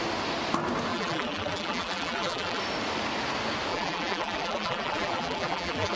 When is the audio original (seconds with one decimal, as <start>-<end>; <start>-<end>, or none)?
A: 0.0-0.9; 2.6-3.7